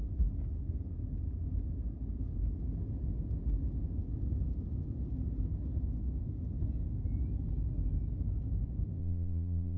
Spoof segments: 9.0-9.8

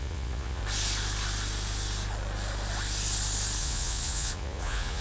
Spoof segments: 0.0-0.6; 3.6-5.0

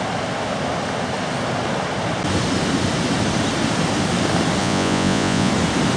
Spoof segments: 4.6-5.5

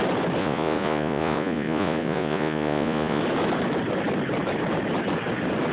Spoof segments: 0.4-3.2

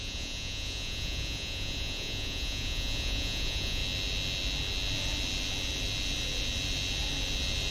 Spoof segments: 0.0-3.8

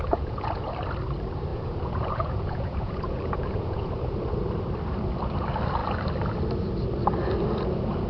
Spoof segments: 0.0-0.7; 1.5-3.9

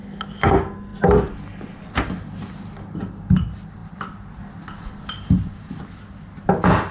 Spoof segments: none